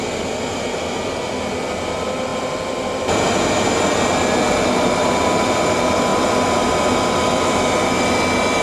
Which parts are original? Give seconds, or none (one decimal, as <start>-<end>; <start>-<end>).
0.0-2.3; 3.8-6.1; 6.7-8.6